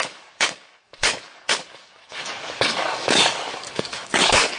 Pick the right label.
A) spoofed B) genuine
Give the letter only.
A